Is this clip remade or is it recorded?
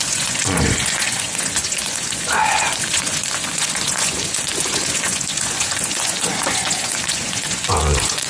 remade